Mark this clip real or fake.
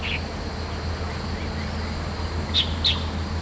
real